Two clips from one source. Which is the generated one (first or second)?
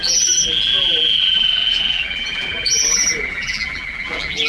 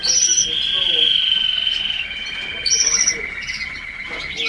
first